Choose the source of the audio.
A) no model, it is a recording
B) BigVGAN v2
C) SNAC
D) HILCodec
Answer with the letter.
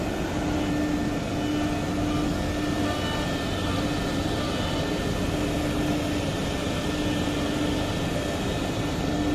A